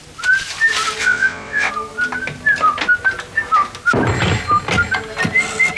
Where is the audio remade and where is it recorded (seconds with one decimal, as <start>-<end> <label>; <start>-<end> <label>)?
0.0-1.0 recorded; 1.0-1.7 remade; 1.7-5.8 recorded